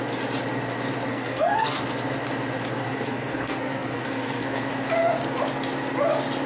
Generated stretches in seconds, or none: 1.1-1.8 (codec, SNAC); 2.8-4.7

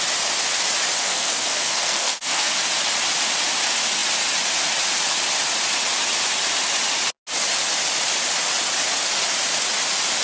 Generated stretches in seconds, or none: 1.0-2.5 (codec, SNAC)

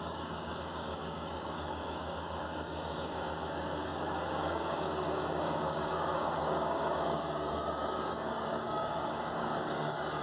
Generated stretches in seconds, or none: 0.0-10.2 (codec, DAC)

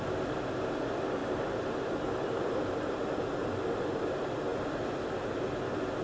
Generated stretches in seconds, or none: 1.2-2.5 (vocoder, BigVGAN v2)

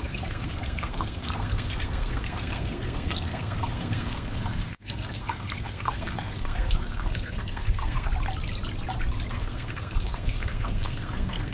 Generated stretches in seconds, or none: 0.0-8.1 (codec, SNAC); 9.3-11.5

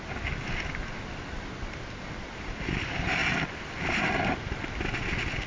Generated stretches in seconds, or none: none

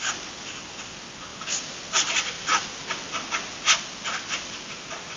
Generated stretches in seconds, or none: none

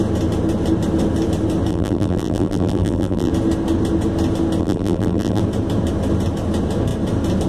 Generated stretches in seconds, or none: 1.7-3.3 (vocoder, BigVGAN v2); 4.6-5.4